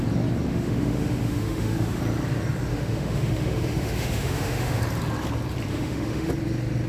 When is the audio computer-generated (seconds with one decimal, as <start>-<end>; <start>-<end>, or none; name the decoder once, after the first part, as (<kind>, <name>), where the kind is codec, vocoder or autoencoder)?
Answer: 0.5-2.0 (autoencoder, DAC-VAE); 2.7-4.8; 5.7-6.3